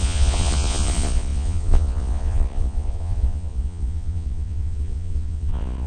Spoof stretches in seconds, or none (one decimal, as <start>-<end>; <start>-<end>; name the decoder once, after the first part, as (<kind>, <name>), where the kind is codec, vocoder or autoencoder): 0.0-5.9 (vocoder, Vocos)